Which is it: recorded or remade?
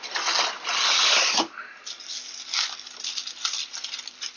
recorded